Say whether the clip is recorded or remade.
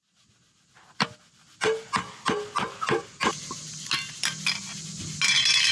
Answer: recorded